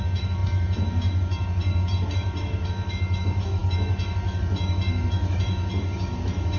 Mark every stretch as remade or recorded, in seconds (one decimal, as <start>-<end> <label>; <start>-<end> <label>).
0.0-6.6 remade